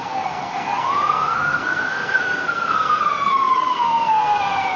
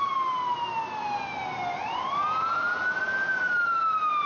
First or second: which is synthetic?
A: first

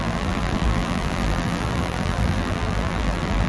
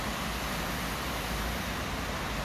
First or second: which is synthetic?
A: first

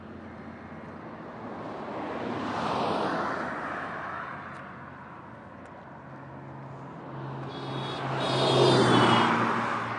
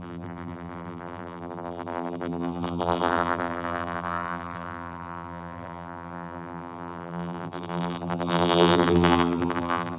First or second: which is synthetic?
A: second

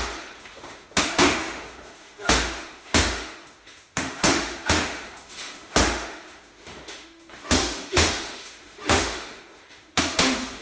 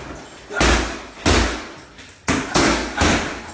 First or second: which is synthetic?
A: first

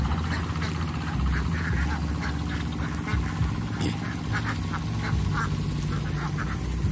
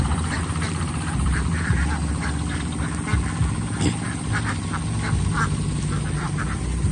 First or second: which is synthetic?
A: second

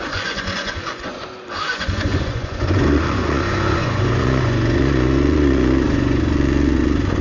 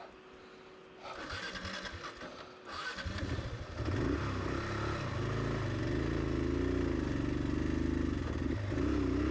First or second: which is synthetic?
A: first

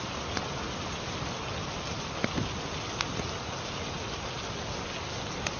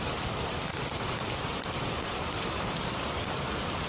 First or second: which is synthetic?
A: second